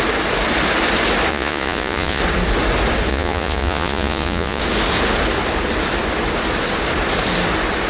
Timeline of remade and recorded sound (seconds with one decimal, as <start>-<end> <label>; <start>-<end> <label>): 0.0-1.3 recorded; 1.3-2.2 remade; 2.2-3.1 recorded; 3.1-4.6 remade; 4.6-7.9 recorded